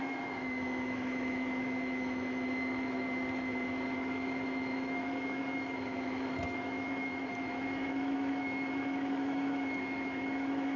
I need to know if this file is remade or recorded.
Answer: remade